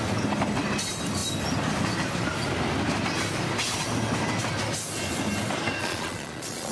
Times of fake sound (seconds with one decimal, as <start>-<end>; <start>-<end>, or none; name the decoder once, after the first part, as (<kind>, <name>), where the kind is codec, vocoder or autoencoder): 5.8-6.7 (vocoder, Vocos)